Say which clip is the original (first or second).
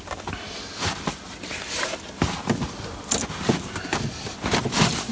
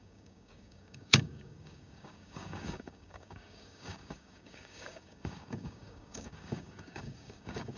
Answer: first